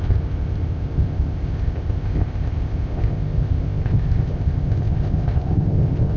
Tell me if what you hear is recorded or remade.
remade